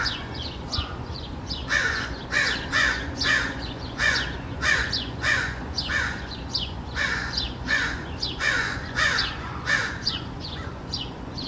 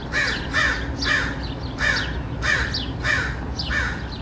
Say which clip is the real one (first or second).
second